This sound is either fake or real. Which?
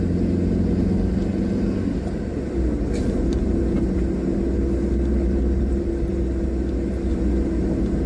real